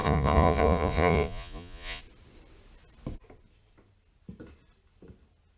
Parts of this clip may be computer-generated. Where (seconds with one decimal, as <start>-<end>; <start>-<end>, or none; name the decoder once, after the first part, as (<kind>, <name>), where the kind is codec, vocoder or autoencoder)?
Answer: 0.0-2.0 (vocoder, Vocos)

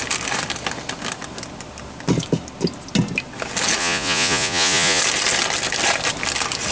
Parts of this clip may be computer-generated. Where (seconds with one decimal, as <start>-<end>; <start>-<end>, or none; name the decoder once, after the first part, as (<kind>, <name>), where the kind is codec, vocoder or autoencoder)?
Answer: 3.8-5.0 (vocoder, Vocos)

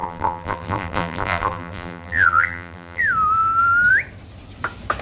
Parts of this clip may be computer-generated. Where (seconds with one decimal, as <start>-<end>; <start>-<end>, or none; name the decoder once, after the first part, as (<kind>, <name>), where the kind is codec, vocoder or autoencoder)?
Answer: 0.0-3.0 (vocoder, BigVGAN v2)

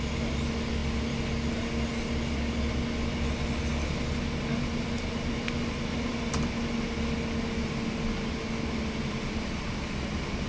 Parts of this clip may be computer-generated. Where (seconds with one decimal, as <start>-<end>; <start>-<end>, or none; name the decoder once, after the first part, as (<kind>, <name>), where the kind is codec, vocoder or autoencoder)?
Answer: none

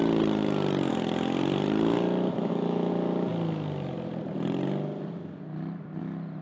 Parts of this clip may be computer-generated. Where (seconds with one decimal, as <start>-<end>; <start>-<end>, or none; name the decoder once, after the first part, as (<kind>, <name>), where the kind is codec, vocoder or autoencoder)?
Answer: 2.3-2.9 (autoencoder, DAC-VAE)

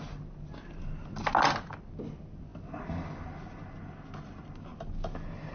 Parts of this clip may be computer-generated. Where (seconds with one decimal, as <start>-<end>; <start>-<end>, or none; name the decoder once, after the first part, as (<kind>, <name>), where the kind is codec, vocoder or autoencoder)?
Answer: none

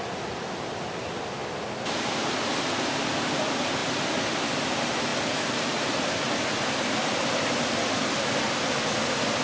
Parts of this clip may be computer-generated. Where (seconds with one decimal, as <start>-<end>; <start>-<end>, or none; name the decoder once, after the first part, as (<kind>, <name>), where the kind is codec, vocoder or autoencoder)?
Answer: none

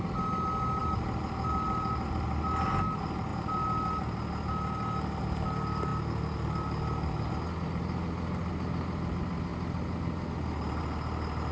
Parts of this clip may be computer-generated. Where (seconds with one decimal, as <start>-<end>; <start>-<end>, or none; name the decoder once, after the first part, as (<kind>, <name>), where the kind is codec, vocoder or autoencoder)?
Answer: none